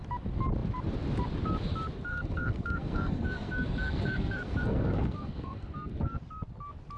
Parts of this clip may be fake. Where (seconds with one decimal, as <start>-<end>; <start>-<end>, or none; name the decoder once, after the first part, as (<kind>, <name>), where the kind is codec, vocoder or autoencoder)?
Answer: 2.1-6.2 (codec, SNAC)